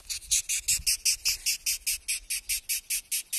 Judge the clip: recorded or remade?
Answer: recorded